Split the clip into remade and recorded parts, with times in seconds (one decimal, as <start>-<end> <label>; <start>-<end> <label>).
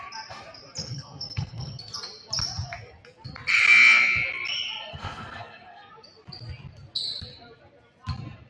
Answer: 0.0-0.8 recorded; 0.8-1.9 remade; 1.9-4.9 recorded; 4.9-5.9 remade; 5.9-8.5 recorded